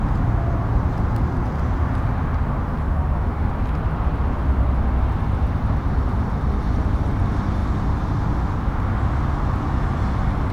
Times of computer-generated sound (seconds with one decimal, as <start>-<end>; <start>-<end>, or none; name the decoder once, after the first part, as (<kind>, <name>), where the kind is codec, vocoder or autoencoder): 2.8-3.5 (autoencoder, DAC-VAE)